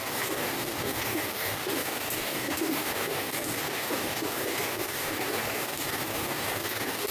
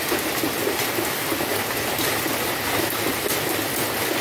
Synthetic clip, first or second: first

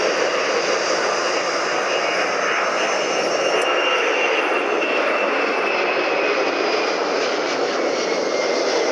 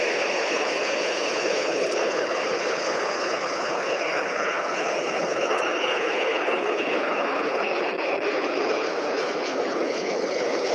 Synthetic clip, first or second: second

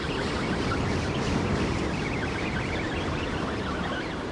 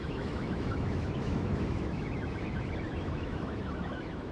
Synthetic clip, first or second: second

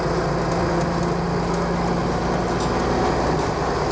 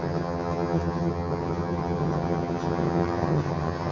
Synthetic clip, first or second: second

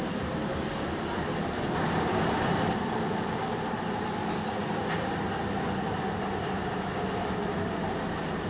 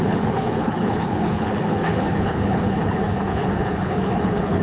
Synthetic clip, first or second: second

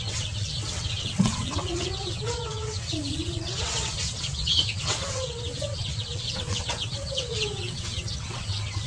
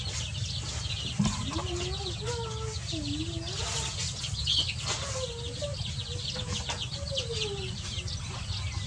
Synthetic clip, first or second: first